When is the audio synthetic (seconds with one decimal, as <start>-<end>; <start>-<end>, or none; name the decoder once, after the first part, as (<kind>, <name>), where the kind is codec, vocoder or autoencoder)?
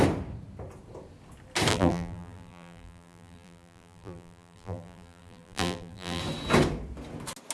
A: 1.7-6.2 (vocoder, BigVGAN v2)